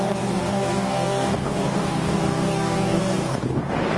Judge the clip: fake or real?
fake